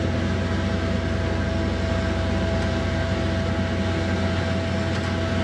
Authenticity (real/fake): real